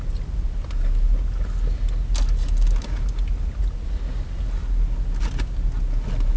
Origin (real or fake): real